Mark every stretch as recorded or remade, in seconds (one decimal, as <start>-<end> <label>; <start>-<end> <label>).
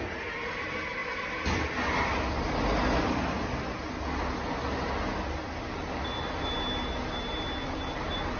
0.0-8.4 recorded